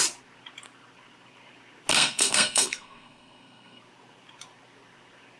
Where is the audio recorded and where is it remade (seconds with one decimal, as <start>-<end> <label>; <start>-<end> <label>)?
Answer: 0.0-1.9 recorded; 1.9-3.8 remade; 3.8-5.4 recorded